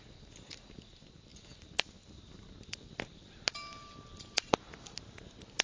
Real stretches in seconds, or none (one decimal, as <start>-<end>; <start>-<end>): 0.0-5.6